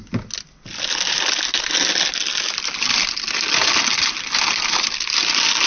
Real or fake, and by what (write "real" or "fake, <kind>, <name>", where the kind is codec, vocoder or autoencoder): real